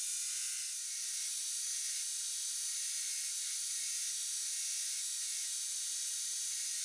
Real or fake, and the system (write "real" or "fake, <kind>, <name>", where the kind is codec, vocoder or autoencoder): real